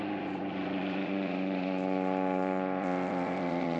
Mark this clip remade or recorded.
remade